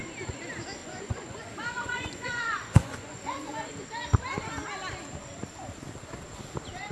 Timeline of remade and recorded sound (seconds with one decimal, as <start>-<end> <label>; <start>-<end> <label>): 0.0-0.8 recorded; 0.8-3.5 remade; 3.5-6.9 recorded